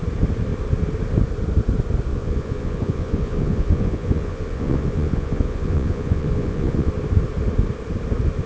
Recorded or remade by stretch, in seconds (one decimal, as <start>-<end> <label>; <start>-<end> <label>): 0.0-2.1 recorded; 2.1-6.9 remade; 6.9-8.5 recorded